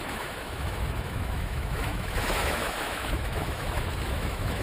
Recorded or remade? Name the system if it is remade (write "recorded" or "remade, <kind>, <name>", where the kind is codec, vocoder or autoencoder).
remade, autoencoder, DAC-VAE